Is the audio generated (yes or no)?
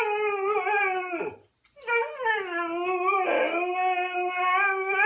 no